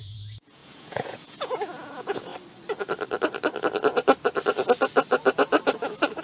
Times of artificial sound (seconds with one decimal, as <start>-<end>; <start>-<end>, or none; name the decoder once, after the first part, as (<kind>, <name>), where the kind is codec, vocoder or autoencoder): 0.0-2.3 (vocoder, Vocos)